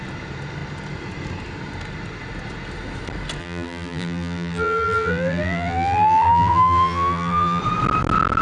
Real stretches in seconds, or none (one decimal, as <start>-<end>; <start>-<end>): 0.0-3.4; 7.6-8.4